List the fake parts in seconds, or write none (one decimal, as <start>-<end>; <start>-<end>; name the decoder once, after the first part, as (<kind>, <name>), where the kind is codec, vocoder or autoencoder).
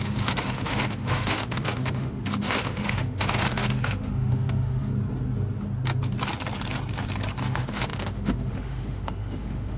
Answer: 0.0-4.9 (autoencoder, DAC-VAE); 7.4-9.8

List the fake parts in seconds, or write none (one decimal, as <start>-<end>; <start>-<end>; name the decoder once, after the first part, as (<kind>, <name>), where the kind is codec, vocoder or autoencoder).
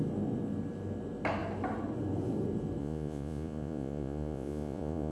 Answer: 2.8-5.1 (vocoder, Vocos)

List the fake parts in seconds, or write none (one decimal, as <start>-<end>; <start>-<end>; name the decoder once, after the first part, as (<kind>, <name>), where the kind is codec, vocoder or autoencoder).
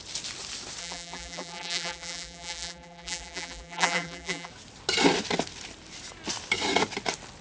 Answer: 0.8-4.5 (vocoder, BigVGAN v2)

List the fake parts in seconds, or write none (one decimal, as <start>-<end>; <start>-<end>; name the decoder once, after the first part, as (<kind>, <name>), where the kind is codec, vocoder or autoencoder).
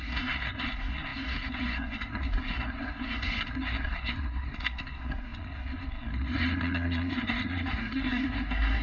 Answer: 0.0-8.8 (codec, SNAC)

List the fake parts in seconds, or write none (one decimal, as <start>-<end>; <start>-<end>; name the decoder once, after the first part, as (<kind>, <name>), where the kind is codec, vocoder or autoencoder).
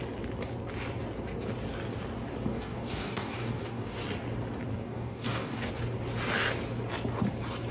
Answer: 2.5-4.0 (codec, DAC); 4.7-5.7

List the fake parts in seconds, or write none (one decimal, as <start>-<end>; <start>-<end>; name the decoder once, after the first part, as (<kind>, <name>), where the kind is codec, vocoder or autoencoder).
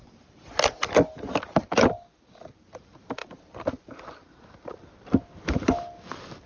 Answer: none